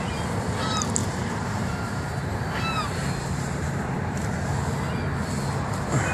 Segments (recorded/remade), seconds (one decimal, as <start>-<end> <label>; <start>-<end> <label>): 0.0-1.0 recorded; 1.0-4.7 remade; 4.7-6.1 recorded